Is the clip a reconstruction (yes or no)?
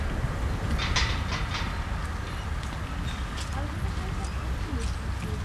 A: no